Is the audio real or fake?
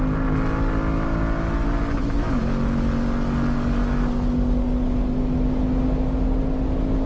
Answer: real